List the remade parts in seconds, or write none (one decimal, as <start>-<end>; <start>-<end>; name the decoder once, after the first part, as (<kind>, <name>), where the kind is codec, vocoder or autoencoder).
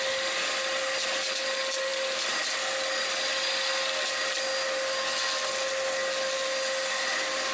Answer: none